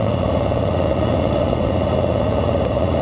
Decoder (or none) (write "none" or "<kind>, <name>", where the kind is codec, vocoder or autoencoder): vocoder, Vocos